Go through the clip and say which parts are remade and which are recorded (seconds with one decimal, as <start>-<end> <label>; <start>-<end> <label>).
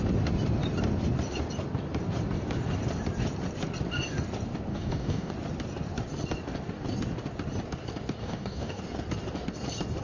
0.0-4.7 recorded; 4.7-5.3 remade; 5.3-8.2 recorded; 8.2-8.8 remade; 8.8-10.0 recorded